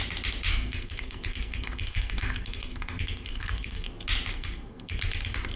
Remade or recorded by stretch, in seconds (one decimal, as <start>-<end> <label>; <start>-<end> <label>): 0.0-0.5 recorded; 0.5-3.9 remade; 3.9-4.3 recorded; 4.3-5.0 remade; 5.0-5.6 recorded